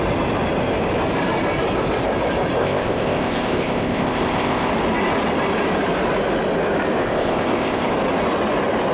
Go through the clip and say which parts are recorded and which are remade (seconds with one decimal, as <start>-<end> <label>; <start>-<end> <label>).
0.0-2.6 recorded; 2.6-4.7 remade; 4.7-7.0 recorded; 7.0-7.9 remade; 7.9-8.9 recorded